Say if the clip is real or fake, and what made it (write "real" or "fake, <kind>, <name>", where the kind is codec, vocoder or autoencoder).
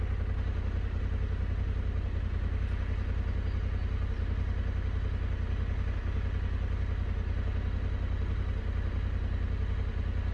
real